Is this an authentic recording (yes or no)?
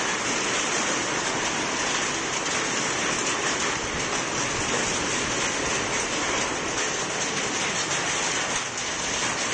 yes